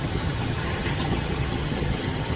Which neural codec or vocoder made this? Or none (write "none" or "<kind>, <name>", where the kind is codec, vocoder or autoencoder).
vocoder, HiFi-GAN